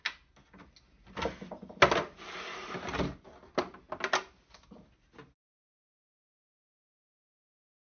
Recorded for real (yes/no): yes